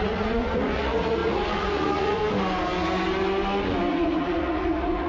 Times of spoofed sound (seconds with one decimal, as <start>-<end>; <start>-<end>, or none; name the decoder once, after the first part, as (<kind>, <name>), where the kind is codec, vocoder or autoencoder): 0.0-2.2 (vocoder, Vocos); 3.9-5.1